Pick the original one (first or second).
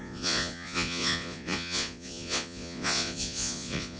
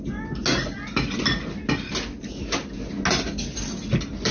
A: second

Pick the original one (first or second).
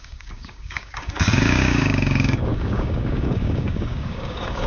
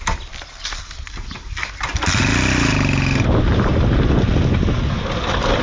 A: second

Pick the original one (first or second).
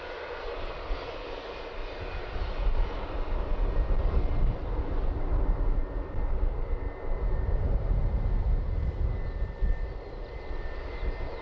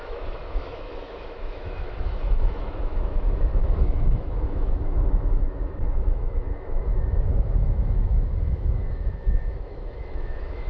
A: first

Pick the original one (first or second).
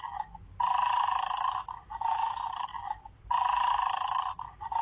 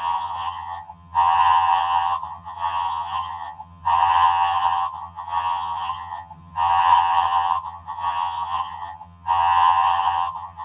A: first